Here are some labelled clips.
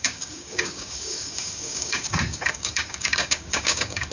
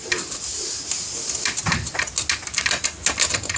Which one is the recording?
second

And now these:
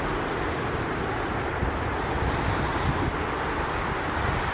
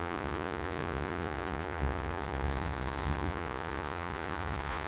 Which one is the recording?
first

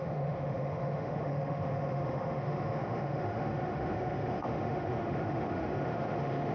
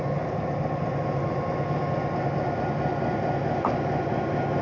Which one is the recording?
second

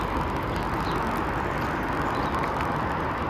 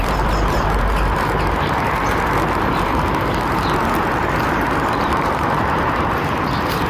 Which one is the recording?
first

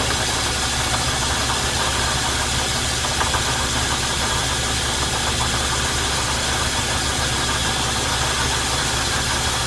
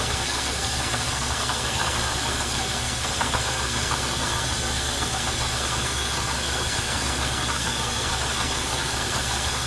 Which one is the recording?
first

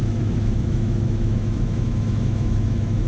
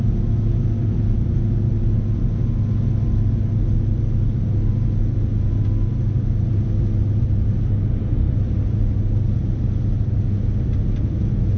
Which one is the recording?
second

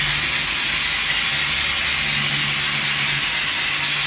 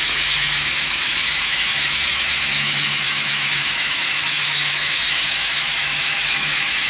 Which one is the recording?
first